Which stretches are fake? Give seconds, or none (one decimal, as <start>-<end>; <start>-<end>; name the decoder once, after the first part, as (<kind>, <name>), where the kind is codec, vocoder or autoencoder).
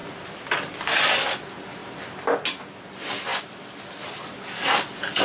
0.0-1.1 (vocoder, BigVGAN v2); 3.3-3.8